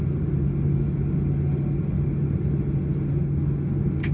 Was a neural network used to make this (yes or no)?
no